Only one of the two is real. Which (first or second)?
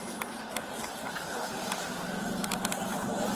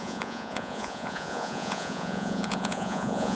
first